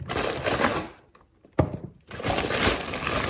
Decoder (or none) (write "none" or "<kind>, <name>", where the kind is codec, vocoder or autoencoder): none